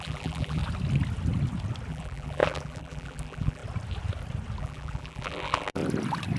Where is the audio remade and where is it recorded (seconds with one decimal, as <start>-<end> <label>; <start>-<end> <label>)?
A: 0.0-0.6 remade; 0.6-1.9 recorded; 1.9-3.6 remade; 3.6-4.6 recorded; 4.6-5.8 remade; 5.8-6.4 recorded

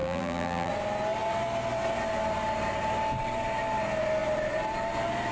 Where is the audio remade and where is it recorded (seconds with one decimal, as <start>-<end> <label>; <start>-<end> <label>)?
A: 0.0-0.7 remade; 0.7-5.3 recorded

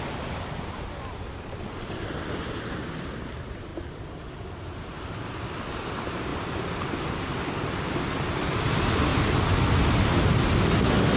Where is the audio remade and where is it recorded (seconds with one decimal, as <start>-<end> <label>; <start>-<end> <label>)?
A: 0.0-3.7 remade; 3.7-4.8 recorded; 4.8-9.1 remade; 9.1-11.2 recorded

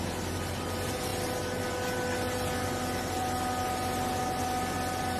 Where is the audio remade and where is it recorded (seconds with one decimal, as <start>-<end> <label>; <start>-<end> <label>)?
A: 0.0-5.2 recorded

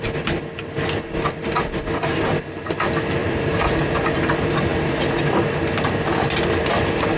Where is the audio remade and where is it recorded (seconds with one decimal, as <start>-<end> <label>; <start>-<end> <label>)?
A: 0.0-3.2 recorded; 3.2-3.9 remade; 3.9-7.2 recorded

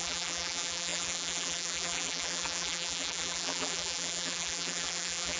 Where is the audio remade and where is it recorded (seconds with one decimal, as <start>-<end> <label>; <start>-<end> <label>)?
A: 0.0-5.4 remade